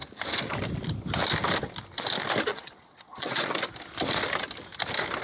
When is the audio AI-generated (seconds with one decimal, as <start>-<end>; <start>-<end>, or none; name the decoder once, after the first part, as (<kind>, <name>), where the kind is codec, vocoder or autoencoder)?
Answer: 2.5-3.5 (vocoder, Vocos)